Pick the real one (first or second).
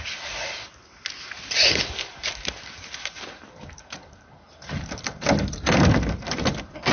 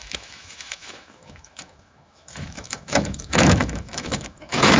first